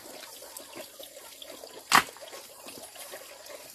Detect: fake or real real